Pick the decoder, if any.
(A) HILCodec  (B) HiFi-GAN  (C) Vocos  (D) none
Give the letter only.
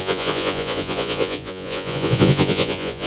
C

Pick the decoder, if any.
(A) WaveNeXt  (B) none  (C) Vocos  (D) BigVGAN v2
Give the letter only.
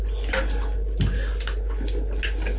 B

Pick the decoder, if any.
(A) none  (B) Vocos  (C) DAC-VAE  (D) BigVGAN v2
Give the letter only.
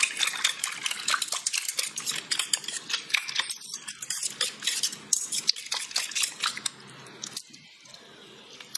A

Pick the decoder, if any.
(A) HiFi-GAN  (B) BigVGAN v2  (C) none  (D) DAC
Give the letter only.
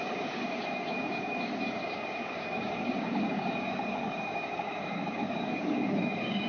D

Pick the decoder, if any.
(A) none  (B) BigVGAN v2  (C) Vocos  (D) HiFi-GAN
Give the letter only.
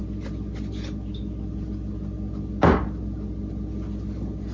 A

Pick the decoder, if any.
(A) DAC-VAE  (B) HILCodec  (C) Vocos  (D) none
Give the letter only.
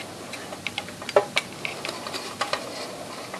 D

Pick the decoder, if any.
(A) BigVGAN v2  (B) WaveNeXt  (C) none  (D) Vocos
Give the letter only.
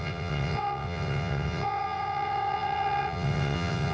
B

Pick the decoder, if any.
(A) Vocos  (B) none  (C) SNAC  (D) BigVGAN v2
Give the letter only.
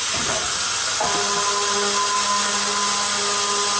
B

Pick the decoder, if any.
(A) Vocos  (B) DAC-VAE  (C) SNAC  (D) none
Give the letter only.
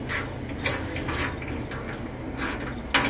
D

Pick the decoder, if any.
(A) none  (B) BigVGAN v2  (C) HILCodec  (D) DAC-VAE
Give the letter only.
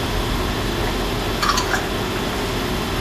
A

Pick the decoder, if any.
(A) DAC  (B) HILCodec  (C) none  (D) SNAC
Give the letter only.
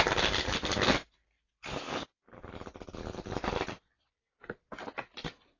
C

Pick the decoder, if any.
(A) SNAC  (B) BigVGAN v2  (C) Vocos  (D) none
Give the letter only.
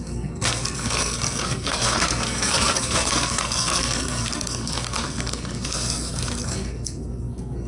A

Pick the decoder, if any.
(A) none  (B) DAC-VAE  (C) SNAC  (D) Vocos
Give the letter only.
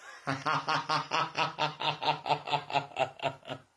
A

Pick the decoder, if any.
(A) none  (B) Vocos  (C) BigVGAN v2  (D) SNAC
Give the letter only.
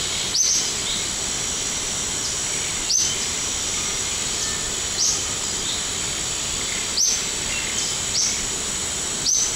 A